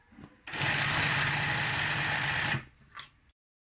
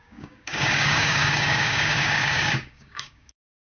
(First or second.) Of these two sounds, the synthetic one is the second